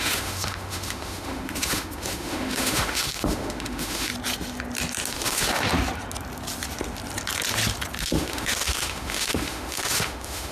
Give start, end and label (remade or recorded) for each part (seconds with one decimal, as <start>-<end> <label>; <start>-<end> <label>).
0.0-4.1 remade; 4.1-5.1 recorded; 5.1-5.7 remade; 5.7-8.0 recorded; 8.0-10.5 remade